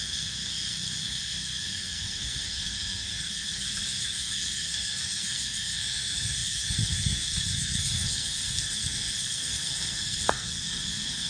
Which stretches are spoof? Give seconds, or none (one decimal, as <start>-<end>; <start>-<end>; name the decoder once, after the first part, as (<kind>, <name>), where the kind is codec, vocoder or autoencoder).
0.0-11.3 (codec, SNAC)